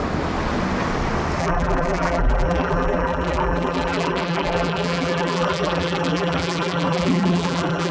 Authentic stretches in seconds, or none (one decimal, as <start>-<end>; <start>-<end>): 0.0-1.4